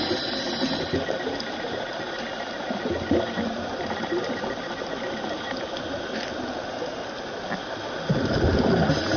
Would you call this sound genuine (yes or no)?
yes